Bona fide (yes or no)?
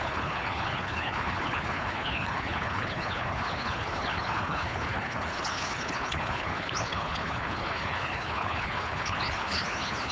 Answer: no